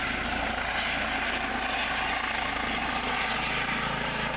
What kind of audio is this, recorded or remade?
recorded